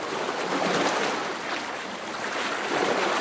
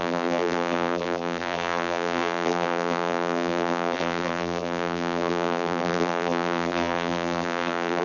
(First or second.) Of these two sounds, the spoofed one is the second